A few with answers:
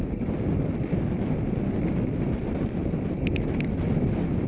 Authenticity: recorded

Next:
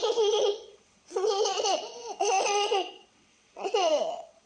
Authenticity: remade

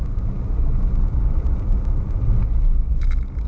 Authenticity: recorded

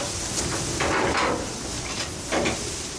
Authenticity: recorded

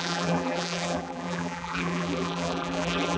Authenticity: remade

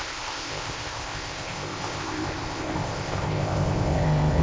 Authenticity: remade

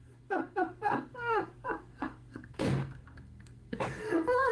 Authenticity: remade